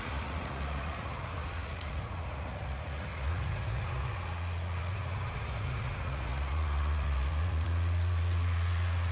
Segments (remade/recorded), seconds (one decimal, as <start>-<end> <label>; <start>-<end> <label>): 0.0-9.1 remade